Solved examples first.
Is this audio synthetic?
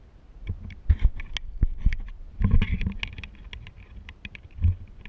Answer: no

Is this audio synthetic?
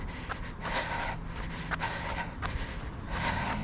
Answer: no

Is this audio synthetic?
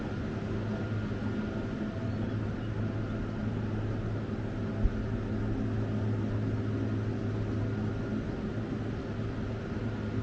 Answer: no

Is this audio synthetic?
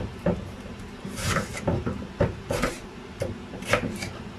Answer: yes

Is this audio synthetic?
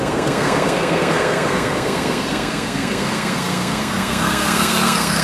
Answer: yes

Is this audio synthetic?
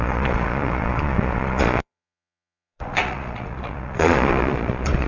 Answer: yes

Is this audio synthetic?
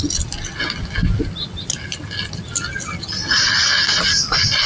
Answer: no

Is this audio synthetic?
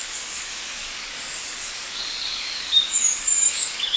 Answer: yes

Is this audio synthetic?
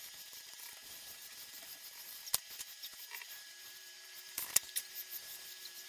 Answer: yes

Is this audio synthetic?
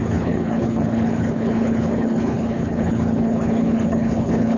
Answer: yes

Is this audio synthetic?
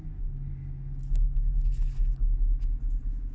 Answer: no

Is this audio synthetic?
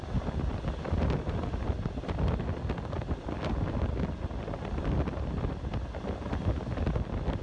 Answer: no